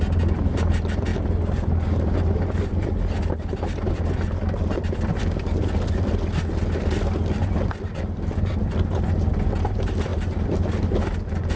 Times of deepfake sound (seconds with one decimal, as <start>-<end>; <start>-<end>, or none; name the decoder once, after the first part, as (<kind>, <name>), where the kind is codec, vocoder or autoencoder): none